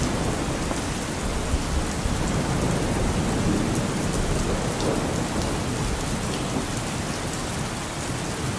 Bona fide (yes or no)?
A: yes